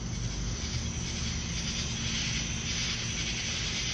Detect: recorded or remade recorded